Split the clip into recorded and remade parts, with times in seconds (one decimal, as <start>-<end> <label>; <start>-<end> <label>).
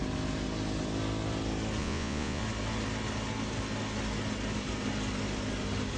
0.0-1.8 recorded; 1.8-2.4 remade; 2.4-6.0 recorded